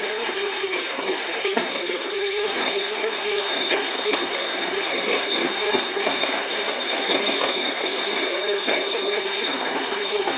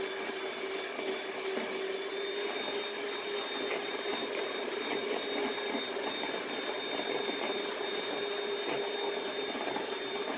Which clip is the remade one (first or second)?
first